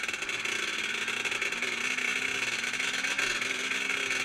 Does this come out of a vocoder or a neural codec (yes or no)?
no